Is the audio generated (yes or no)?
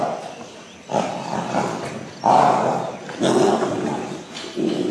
no